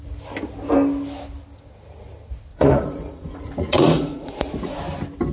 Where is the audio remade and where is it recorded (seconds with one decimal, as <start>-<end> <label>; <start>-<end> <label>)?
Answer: 0.0-2.5 recorded; 2.5-4.8 remade; 4.8-5.3 recorded